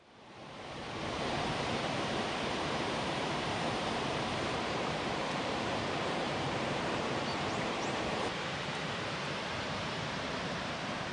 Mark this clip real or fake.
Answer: fake